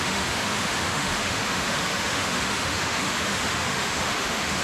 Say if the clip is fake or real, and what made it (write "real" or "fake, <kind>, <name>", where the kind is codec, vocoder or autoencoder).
fake, autoencoder, DAC-VAE